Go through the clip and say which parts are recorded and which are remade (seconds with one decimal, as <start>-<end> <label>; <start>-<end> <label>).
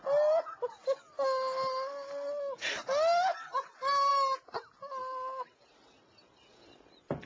0.0-7.3 recorded